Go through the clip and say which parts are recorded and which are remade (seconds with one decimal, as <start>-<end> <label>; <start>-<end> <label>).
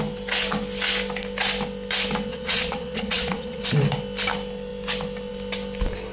0.0-2.3 recorded; 2.3-3.6 remade; 3.6-6.1 recorded